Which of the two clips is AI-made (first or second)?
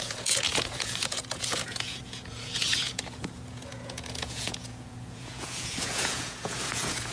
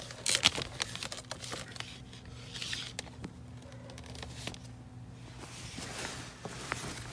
first